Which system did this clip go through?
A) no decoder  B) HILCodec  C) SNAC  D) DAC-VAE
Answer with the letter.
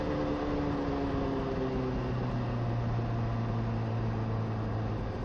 A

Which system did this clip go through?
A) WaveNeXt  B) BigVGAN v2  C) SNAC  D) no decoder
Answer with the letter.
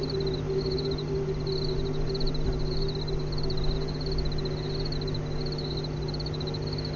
D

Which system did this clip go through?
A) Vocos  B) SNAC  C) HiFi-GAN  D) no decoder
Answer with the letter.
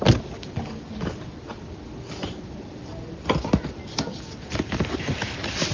D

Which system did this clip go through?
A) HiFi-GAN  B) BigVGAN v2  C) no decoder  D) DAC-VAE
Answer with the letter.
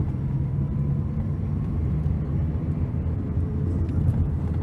B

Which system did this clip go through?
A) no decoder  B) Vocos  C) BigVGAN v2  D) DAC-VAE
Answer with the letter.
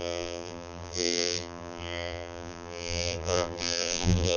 C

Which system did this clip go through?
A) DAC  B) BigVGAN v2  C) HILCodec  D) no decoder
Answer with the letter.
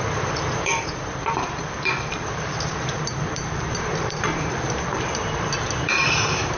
B